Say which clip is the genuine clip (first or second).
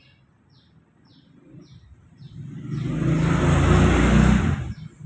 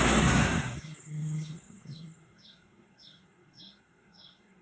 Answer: first